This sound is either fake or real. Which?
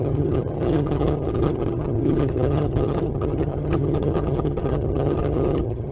fake